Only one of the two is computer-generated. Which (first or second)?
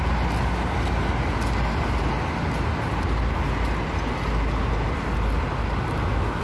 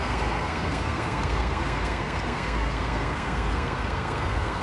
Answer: second